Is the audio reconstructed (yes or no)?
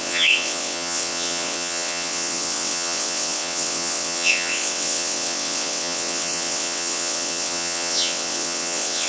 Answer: yes